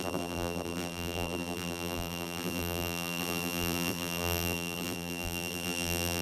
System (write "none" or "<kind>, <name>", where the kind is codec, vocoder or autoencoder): vocoder, BigVGAN v2